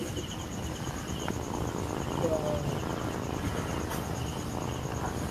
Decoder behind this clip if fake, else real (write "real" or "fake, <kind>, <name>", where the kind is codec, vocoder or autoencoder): real